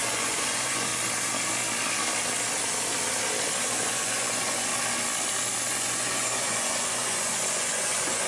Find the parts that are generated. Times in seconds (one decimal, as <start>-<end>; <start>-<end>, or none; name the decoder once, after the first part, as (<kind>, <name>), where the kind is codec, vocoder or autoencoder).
0.0-0.9 (vocoder, Vocos); 3.7-4.7; 5.7-8.3